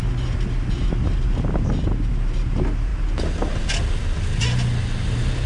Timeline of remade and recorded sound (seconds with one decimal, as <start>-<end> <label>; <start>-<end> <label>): 0.0-5.5 recorded